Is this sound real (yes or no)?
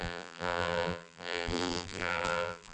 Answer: no